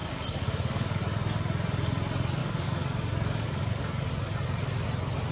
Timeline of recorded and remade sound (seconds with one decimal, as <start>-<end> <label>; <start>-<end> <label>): 0.0-1.0 remade; 1.0-2.4 recorded; 2.4-4.1 remade; 4.1-5.3 recorded